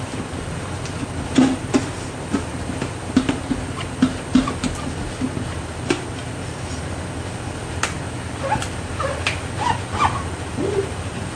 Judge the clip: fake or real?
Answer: real